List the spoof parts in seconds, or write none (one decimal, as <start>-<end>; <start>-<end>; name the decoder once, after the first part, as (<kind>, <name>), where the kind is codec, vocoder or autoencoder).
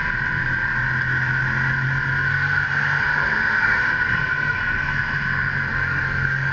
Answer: 2.3-6.5 (codec, SNAC)